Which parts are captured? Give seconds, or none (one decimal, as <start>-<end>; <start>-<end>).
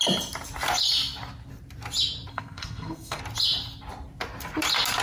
0.0-2.3; 3.2-5.0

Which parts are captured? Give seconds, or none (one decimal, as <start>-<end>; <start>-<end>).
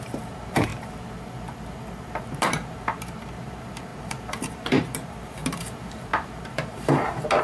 0.7-2.2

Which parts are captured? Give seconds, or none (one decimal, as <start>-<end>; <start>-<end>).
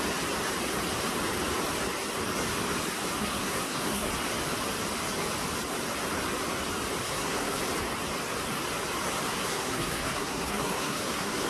0.0-3.2; 4.1-7.0; 7.6-9.3